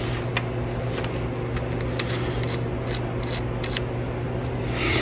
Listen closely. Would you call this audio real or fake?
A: real